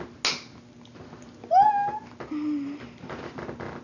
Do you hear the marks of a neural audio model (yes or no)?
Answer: no